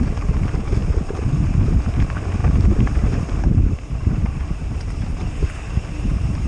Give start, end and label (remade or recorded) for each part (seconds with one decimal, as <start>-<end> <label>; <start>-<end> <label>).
0.0-2.4 recorded; 2.4-6.5 remade